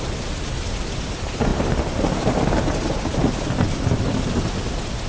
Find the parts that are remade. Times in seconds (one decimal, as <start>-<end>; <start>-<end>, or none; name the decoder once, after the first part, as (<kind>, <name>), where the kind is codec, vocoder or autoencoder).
none

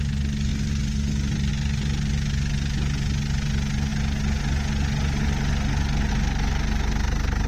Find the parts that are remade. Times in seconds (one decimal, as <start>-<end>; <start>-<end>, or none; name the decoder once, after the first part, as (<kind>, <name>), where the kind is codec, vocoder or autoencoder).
none